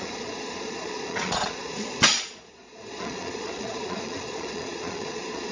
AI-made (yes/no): yes